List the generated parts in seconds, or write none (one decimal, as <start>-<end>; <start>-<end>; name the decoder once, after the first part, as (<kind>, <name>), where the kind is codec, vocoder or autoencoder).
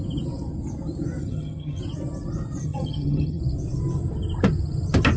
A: 1.2-1.8 (vocoder, HiFi-GAN); 2.6-3.4